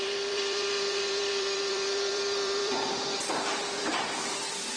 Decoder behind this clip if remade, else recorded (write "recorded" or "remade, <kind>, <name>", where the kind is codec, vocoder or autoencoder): remade, vocoder, BigVGAN v2